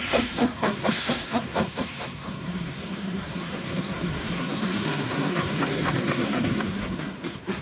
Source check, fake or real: fake